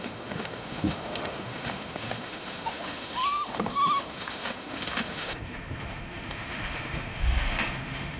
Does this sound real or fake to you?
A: fake